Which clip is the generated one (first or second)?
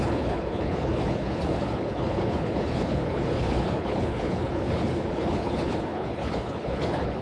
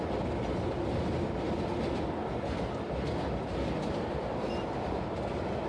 first